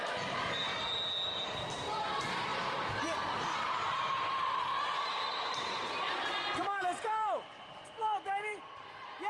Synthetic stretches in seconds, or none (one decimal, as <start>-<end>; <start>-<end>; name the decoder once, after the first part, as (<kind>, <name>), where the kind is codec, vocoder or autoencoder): 0.0-0.7 (vocoder, BigVGAN v2); 1.8-9.3